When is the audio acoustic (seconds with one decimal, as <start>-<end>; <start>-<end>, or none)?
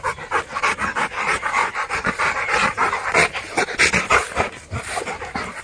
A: 0.0-1.6; 2.1-5.6